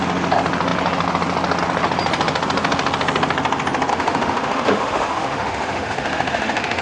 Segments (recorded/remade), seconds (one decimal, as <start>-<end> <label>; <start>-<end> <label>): 0.0-3.9 recorded; 3.9-6.8 remade